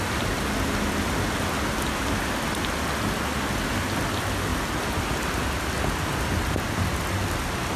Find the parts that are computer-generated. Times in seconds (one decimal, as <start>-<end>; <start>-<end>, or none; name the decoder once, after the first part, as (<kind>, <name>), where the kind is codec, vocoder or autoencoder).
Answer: none